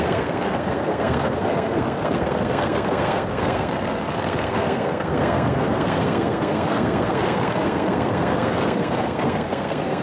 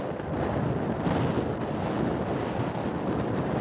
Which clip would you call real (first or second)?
second